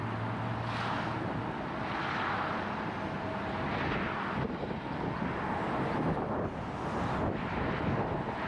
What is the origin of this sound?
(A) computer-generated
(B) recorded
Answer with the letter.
B